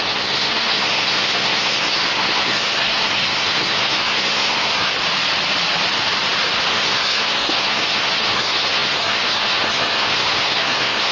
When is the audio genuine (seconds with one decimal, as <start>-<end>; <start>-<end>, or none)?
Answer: 5.0-6.7